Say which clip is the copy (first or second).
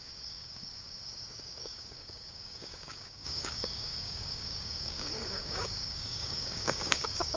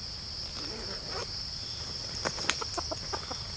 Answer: first